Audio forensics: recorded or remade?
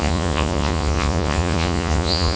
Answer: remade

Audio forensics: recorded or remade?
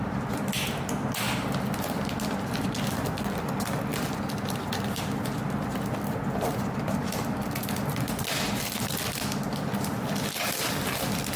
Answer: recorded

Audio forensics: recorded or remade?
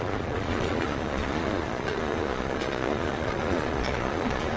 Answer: remade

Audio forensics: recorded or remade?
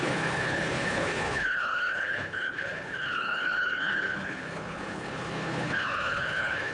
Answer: remade